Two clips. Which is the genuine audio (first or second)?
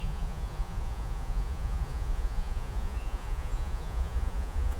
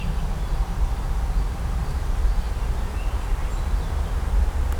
second